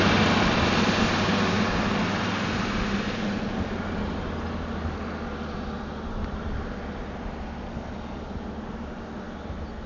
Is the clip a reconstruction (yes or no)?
no